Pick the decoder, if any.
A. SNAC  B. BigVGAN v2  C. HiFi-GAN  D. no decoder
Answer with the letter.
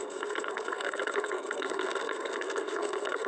A